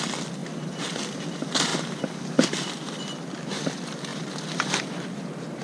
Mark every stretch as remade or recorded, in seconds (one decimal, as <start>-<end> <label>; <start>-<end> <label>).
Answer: 0.0-1.7 recorded; 1.7-3.0 remade; 3.0-4.1 recorded; 4.1-4.9 remade; 4.9-5.6 recorded